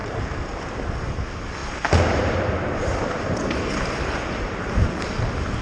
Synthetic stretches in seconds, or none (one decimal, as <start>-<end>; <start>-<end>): 0.0-0.7; 1.6-5.0